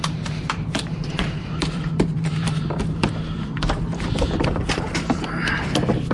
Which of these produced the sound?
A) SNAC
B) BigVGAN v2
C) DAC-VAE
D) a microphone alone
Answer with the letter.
B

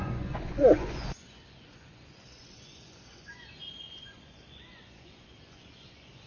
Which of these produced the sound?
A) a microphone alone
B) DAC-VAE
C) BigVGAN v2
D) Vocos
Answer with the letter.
D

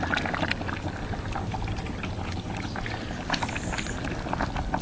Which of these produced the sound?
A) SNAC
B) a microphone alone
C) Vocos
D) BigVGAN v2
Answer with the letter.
B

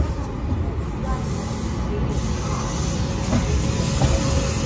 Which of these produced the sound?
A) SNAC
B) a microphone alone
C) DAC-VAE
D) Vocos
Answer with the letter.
B